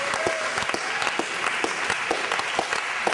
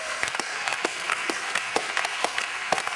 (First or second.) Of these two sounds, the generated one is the second